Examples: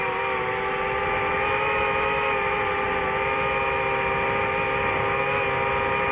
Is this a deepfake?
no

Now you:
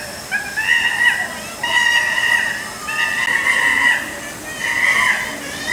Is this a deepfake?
no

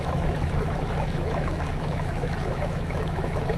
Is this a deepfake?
yes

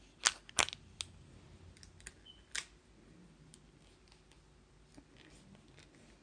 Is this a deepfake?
no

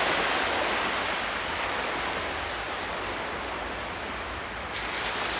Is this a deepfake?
no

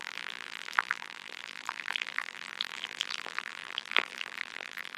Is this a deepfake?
yes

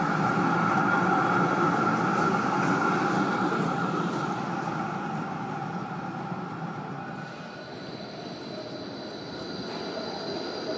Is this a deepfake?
no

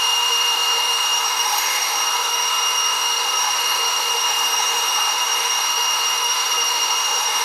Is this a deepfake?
yes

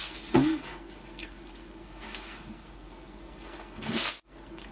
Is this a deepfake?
yes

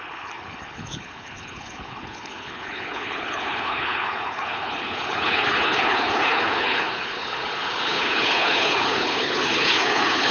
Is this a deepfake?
yes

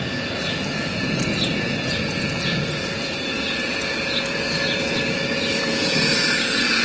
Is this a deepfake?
yes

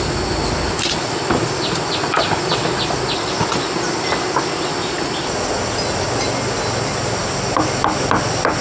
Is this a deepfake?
no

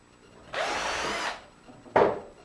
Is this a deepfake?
no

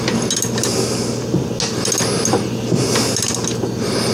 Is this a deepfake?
no